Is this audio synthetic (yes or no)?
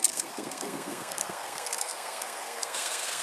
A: yes